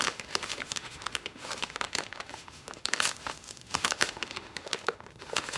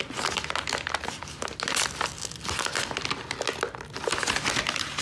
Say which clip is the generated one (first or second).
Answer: first